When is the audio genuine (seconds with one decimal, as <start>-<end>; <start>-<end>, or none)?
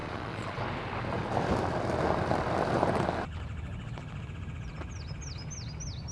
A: 0.6-6.1